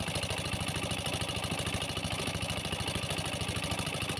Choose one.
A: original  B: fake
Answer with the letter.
A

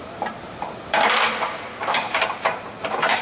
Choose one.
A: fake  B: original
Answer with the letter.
A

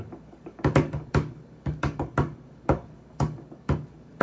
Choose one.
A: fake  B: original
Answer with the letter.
A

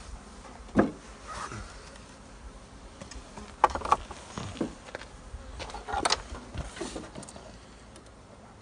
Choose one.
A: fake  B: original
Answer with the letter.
B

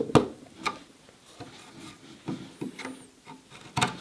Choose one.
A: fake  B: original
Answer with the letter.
B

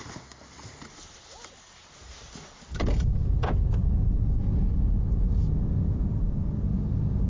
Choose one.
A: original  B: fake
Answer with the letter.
A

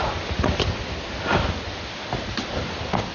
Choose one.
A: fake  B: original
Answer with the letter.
B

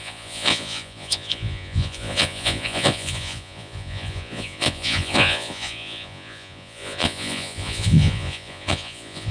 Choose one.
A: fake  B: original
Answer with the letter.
A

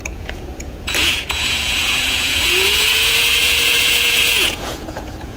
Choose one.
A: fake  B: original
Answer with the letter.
A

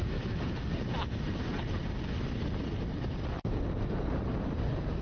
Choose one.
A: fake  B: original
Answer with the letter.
B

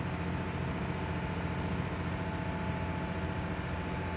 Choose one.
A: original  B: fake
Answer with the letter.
A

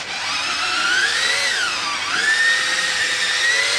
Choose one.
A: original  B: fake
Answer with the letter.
A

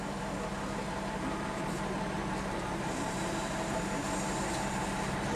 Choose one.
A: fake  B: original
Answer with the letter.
A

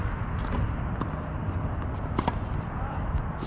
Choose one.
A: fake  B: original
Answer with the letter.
B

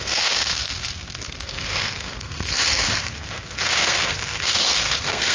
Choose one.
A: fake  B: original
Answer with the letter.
A